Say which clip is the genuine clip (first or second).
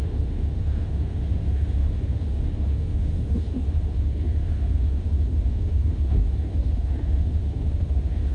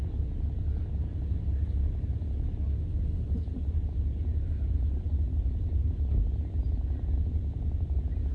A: second